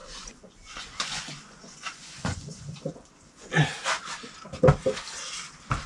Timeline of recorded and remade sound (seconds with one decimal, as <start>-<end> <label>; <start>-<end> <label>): 0.0-3.5 remade; 3.5-5.9 recorded